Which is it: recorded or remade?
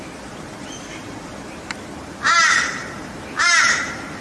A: recorded